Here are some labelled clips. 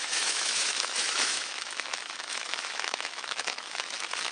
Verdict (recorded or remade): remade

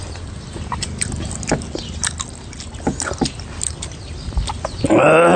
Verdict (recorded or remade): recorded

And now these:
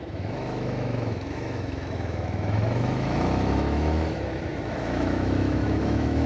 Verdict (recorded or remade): remade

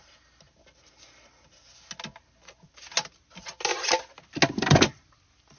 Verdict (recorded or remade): recorded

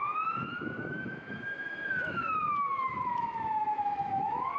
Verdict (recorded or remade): remade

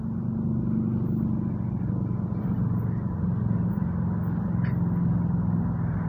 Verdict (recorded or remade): recorded